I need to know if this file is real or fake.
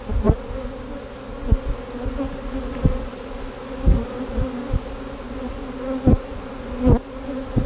real